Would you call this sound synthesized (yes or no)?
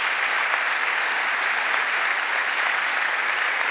no